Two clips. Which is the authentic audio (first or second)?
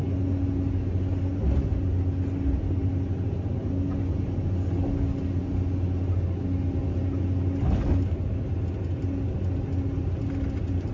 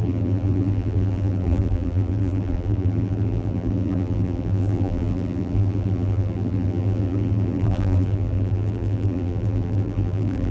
first